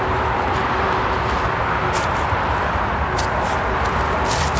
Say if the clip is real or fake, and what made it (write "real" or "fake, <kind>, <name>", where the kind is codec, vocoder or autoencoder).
real